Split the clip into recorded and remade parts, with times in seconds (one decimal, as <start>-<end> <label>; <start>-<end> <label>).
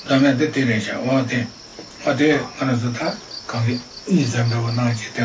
0.0-5.2 recorded